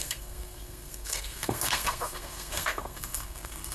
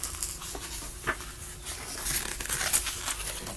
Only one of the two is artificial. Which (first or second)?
first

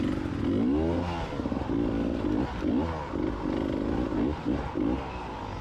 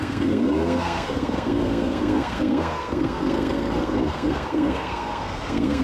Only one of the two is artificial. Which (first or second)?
second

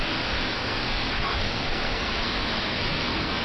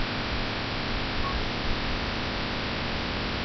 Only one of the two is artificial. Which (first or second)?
first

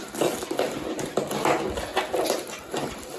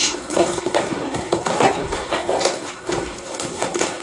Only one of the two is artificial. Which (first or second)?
second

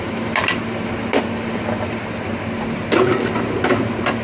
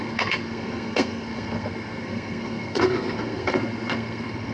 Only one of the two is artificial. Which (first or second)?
second